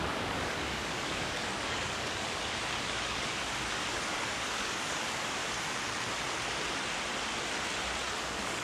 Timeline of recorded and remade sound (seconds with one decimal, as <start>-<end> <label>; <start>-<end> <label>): 0.0-5.4 remade; 5.4-8.2 recorded; 8.2-8.6 remade